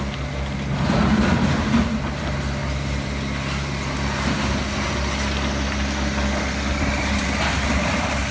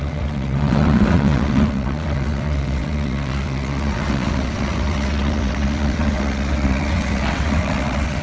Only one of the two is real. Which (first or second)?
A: first